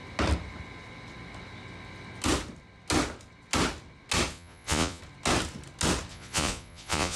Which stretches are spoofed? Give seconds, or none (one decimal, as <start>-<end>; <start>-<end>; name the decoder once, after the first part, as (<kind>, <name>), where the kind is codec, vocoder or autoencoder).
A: 4.3-5.0 (vocoder, Vocos); 6.1-7.2